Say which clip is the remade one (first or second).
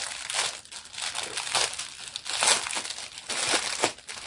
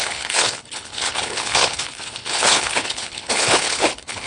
second